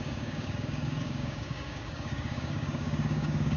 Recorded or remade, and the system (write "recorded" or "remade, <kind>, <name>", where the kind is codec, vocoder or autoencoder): remade, codec, DAC